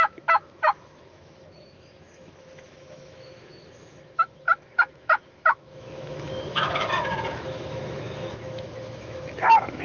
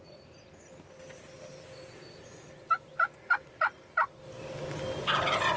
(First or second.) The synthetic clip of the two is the first